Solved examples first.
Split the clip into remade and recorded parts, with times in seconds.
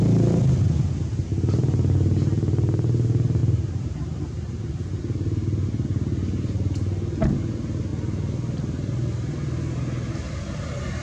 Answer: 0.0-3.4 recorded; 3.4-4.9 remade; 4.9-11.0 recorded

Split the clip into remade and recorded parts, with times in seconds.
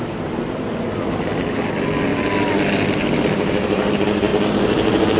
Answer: 0.0-5.2 recorded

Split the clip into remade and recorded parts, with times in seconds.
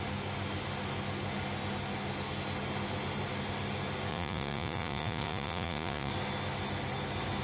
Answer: 0.0-4.1 recorded; 4.1-6.1 remade; 6.1-7.4 recorded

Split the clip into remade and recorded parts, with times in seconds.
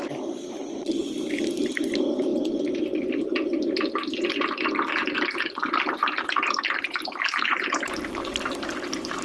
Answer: 0.0-0.6 recorded; 0.6-1.1 remade; 1.1-9.2 recorded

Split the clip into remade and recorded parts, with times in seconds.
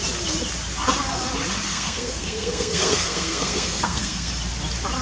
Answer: 0.0-1.7 recorded; 1.7-4.3 remade; 4.3-5.0 recorded